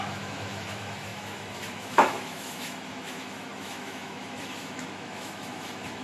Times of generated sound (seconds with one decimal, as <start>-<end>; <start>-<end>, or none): 0.0-6.0